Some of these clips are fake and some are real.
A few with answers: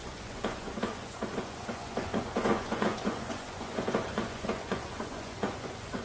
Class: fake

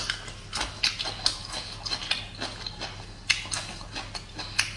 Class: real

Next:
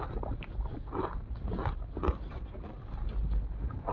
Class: real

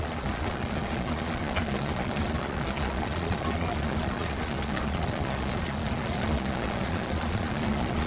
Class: fake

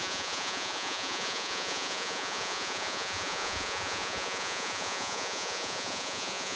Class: fake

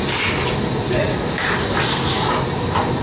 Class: real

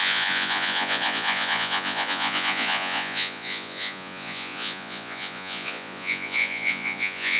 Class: fake